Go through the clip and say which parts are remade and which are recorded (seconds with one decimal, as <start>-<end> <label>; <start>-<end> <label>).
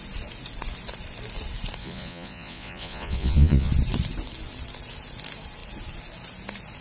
0.0-1.8 recorded; 1.8-3.7 remade; 3.7-6.8 recorded